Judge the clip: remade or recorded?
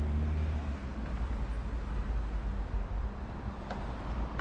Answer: recorded